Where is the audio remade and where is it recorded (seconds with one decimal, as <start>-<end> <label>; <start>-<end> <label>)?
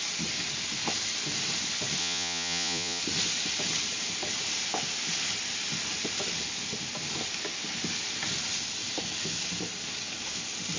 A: 0.0-2.0 recorded; 2.0-3.0 remade; 3.0-10.8 recorded